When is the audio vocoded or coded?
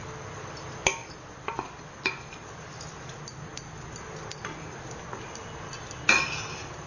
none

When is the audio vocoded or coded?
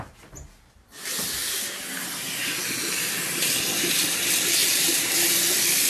1.4-3.5 (vocoder, BigVGAN v2); 4.6-5.1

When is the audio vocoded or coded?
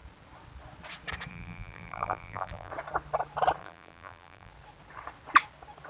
1.3-2.7 (vocoder, BigVGAN v2); 3.6-4.5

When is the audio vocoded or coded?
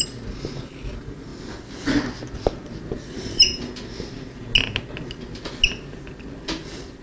none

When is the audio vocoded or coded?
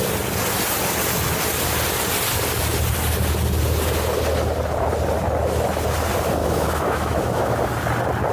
6.4-7.6 (autoencoder, DAC-VAE)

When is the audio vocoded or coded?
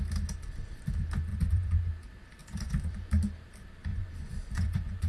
1.3-1.9 (vocoder, Vocos); 2.4-3.1; 3.9-5.1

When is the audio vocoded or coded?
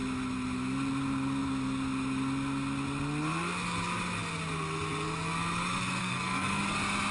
6.0-6.6 (codec, SNAC)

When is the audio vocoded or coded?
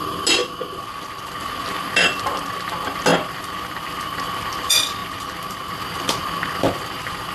5.0-5.5 (vocoder, BigVGAN v2)